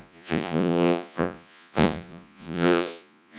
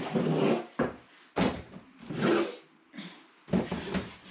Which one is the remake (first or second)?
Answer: first